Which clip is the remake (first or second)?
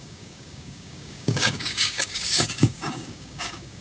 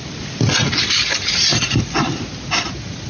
first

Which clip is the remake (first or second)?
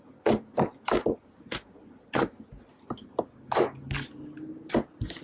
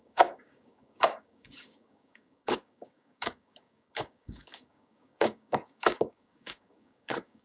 second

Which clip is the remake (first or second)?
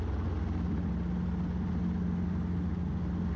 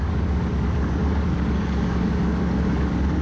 second